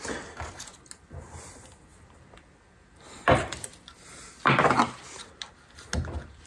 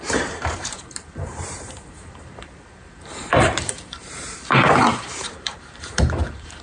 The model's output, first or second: second